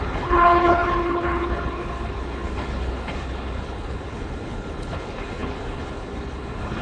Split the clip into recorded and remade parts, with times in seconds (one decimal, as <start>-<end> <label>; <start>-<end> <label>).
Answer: 0.0-6.8 remade